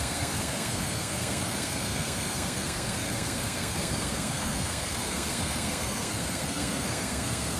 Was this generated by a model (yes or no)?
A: yes